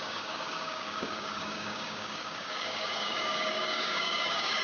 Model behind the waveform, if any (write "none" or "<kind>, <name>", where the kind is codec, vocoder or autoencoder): codec, DAC